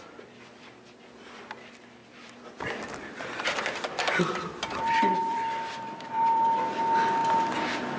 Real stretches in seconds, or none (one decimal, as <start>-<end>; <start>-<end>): 0.0-2.0; 6.8-8.0